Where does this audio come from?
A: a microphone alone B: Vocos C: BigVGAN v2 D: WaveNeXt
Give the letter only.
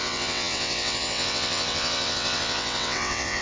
D